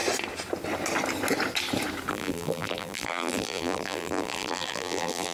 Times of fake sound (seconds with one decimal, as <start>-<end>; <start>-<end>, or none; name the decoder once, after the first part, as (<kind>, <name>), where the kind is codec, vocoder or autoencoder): 2.1-5.3 (vocoder, BigVGAN v2)